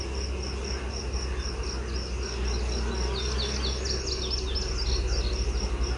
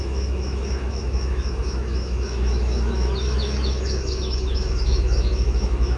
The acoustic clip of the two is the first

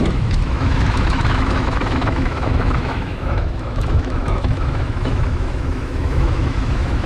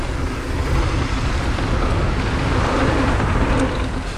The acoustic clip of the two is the second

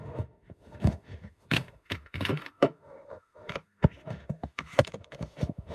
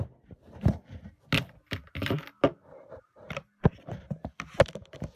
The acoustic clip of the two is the second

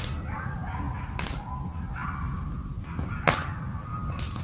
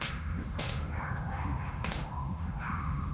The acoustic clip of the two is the first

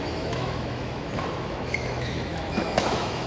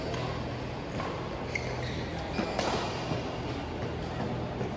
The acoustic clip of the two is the second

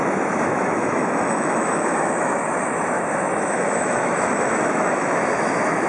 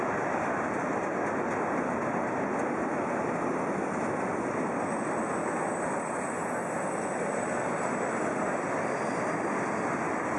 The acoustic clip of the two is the second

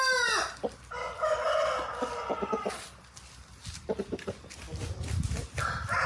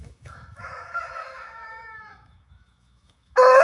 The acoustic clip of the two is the first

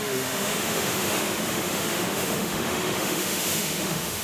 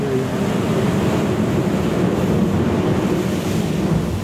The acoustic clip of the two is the second